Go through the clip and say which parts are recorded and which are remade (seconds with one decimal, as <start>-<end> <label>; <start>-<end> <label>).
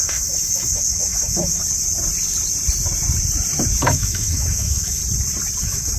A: 0.0-1.6 remade; 1.6-3.8 recorded; 3.8-5.0 remade; 5.0-5.6 recorded; 5.6-6.0 remade